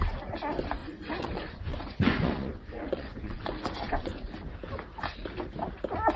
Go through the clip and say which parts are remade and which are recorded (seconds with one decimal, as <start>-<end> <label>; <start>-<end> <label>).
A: 0.0-0.8 recorded; 0.8-4.3 remade; 4.3-6.2 recorded